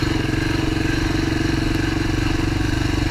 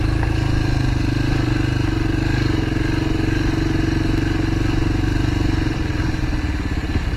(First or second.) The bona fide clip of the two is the second